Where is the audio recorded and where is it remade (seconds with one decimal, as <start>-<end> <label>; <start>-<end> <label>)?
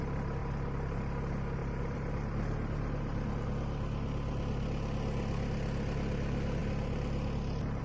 0.0-0.4 recorded; 0.4-1.0 remade; 1.0-1.6 recorded; 1.6-3.4 remade; 3.4-7.8 recorded